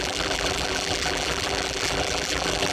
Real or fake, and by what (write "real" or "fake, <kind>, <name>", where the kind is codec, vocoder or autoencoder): fake, vocoder, BigVGAN v2